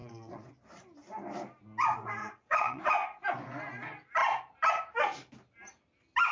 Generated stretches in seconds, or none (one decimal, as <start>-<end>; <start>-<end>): 0.0-0.5; 2.2-2.8